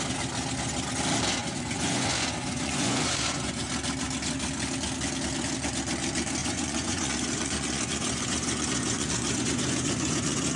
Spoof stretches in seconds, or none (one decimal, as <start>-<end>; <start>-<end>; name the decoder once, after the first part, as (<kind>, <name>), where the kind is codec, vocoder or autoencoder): 1.4-3.6 (vocoder, Vocos); 6.4-10.6